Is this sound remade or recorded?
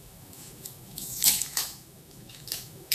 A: remade